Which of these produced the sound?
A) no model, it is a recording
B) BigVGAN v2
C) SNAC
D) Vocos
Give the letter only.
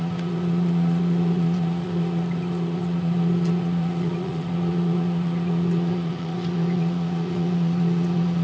D